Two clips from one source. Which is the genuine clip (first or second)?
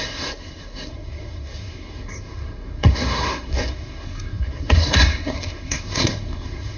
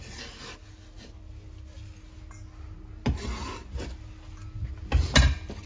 second